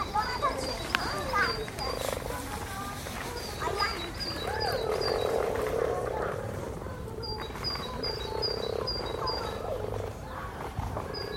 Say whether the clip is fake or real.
fake